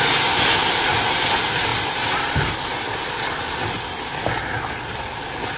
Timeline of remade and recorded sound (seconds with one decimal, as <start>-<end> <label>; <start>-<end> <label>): 0.0-5.6 recorded